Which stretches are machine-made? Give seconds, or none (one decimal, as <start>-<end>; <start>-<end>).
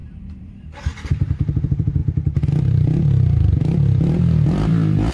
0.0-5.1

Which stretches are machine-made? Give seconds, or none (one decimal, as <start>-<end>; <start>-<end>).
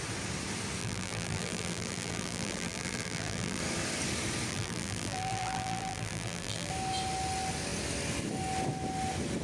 0.8-3.6; 4.5-6.7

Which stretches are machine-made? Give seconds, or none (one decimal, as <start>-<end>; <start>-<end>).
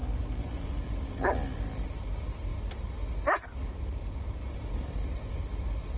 none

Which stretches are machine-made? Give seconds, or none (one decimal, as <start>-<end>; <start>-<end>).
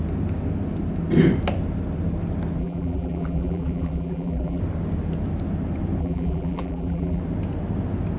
2.6-4.6; 6.0-7.2